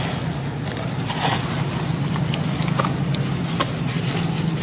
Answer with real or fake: real